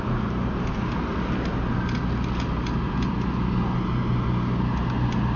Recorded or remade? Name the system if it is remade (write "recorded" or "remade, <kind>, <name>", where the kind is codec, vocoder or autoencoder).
recorded